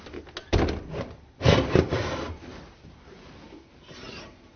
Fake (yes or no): no